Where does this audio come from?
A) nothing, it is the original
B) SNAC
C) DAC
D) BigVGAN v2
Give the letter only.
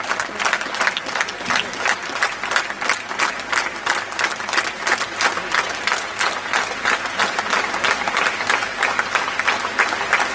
A